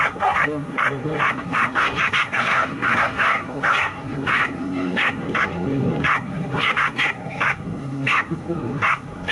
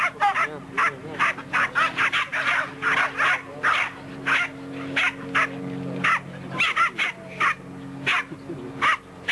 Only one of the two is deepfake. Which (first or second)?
first